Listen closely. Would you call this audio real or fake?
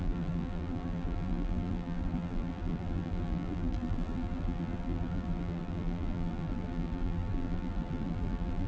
fake